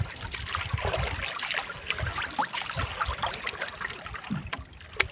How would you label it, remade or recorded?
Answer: recorded